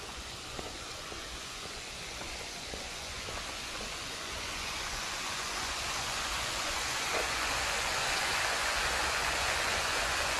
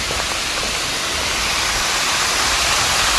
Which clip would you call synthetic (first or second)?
first